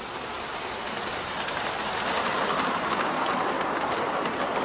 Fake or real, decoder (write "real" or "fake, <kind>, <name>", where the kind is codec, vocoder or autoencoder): real